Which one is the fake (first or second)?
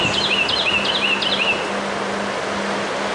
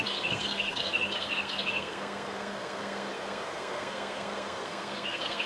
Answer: second